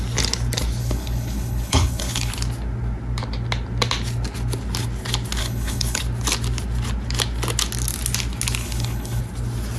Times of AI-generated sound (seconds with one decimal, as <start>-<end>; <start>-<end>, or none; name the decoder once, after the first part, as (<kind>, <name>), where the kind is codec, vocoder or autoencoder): 0.8-2.3 (codec, HILCodec); 5.4-6.0; 8.6-9.2